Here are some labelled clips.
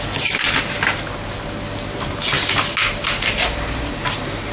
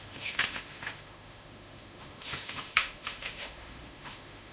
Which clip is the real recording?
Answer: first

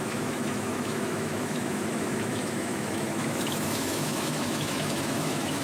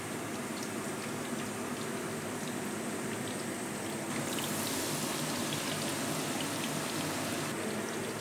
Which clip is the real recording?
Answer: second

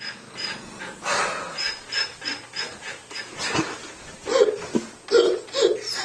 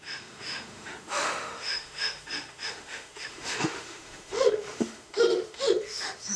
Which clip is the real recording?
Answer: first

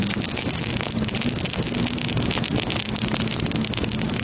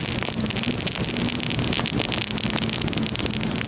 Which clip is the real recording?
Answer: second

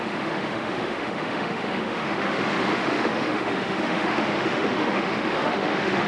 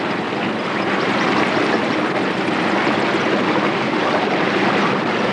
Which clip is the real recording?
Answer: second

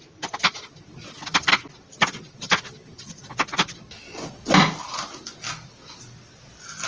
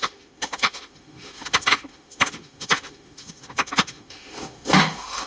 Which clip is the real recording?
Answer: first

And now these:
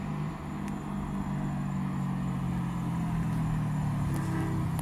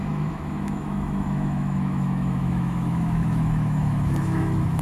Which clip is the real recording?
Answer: first